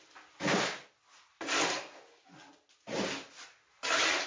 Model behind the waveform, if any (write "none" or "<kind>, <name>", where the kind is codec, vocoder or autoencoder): none